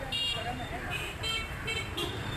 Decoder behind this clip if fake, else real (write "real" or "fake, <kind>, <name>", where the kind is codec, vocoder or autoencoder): fake, vocoder, BigVGAN v2